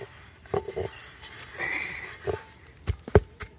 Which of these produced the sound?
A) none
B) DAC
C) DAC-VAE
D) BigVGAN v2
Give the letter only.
A